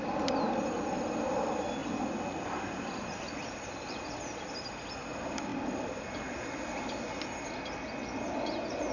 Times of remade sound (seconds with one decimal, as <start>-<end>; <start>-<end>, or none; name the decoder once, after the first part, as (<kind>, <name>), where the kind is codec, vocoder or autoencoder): none